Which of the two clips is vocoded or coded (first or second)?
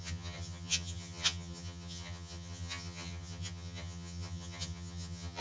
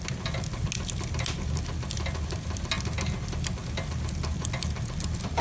first